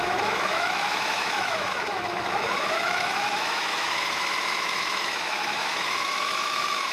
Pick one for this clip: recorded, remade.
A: remade